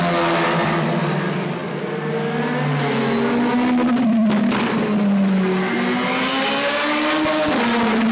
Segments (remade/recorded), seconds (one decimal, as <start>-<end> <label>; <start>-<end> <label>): 0.0-8.1 recorded